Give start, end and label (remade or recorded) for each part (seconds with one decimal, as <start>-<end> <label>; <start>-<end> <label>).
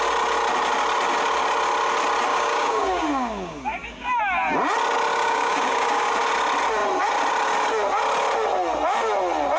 0.0-2.3 recorded; 2.3-4.2 remade; 4.2-5.1 recorded; 5.1-6.1 remade; 6.1-9.6 recorded